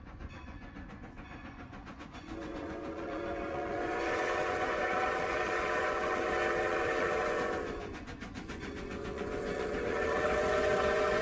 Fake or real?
fake